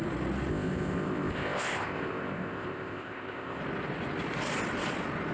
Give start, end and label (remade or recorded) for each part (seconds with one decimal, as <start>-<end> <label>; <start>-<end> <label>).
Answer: 0.0-0.5 recorded; 0.5-3.6 remade; 3.6-5.3 recorded